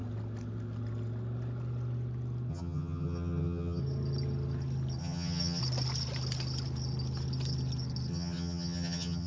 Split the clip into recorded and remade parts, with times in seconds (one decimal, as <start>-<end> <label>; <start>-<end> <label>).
0.0-2.5 recorded; 2.5-3.8 remade; 3.8-5.0 recorded; 5.0-5.6 remade; 5.6-8.1 recorded; 8.1-9.3 remade